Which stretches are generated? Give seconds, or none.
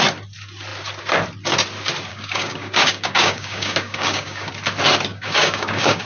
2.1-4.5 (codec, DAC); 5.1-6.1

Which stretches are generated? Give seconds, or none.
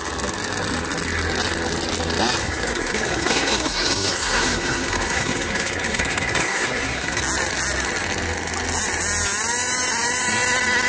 2.4-7.2 (codec, SNAC)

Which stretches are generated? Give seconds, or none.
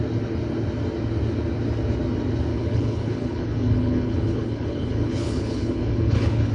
2.5-6.5 (codec, HILCodec)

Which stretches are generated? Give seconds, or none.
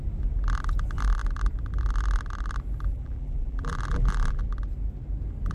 2.9-4.4 (vocoder, BigVGAN v2)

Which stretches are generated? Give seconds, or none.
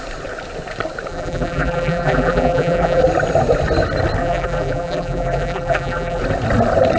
1.1-3.0 (vocoder, BigVGAN v2); 4.2-6.2